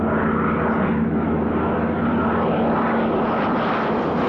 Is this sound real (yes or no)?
yes